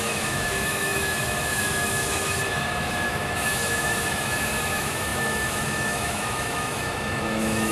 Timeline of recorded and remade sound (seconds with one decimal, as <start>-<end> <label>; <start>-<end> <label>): 0.0-7.7 remade